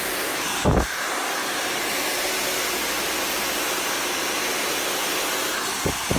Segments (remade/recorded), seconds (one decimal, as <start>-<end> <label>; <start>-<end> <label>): 0.0-6.2 recorded